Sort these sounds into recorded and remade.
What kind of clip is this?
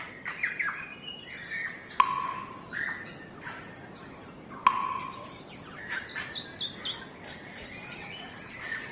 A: recorded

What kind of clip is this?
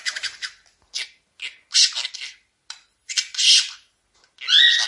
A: recorded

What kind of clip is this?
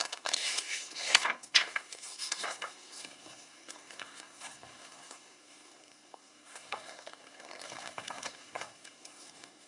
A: remade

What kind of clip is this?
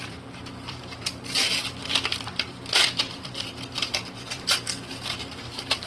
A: remade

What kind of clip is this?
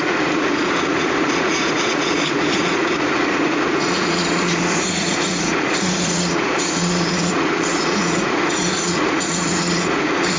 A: remade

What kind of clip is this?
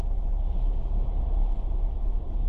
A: recorded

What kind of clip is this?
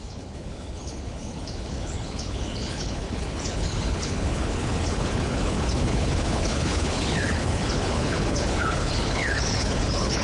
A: remade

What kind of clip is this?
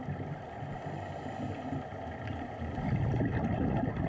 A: recorded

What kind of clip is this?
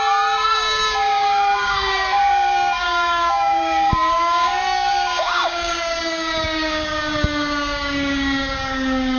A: remade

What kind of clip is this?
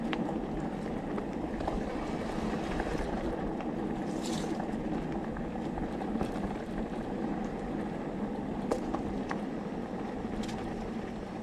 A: remade